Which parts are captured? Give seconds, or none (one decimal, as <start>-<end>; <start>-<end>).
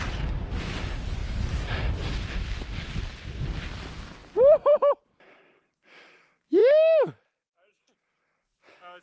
0.0-9.0